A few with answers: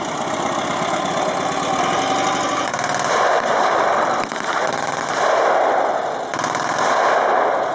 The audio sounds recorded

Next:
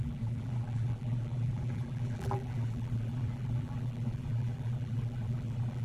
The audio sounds remade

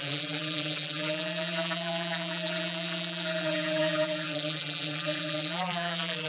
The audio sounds remade